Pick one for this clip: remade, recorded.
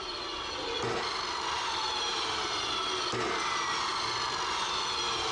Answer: recorded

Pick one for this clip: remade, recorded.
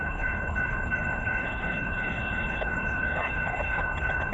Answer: remade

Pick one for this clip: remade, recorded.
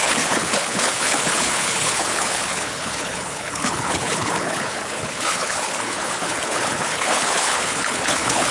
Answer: remade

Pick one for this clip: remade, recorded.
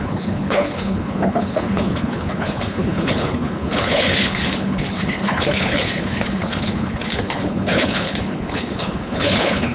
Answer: remade